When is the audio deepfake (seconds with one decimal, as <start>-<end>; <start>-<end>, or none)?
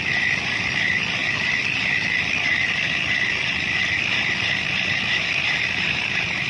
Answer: none